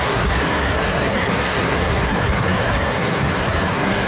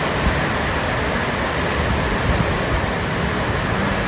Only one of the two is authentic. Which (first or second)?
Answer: second